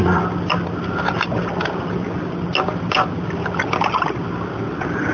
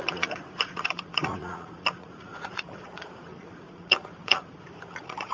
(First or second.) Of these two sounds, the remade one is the second